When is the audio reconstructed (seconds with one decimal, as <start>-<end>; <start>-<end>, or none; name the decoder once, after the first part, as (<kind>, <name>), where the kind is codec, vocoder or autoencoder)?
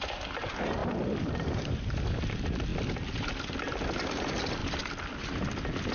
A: none